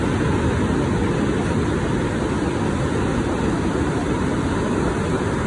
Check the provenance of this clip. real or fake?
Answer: real